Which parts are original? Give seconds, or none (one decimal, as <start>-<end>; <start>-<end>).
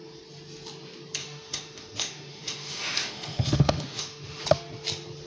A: 0.0-1.2; 4.4-5.3